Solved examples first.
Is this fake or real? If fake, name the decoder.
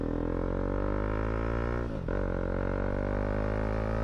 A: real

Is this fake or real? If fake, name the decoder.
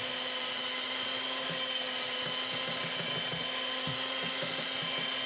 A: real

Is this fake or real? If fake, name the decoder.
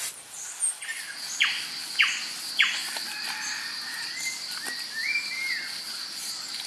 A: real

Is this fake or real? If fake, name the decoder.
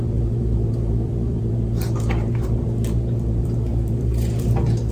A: fake, vocoder, BigVGAN v2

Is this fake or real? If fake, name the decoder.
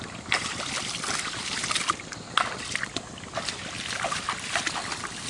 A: real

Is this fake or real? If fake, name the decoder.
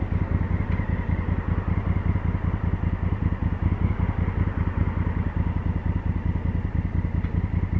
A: real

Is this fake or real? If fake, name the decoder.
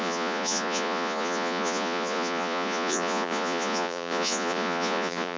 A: fake, vocoder, Vocos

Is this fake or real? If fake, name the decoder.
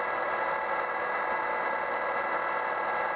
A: real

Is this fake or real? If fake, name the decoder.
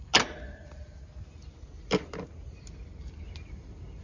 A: real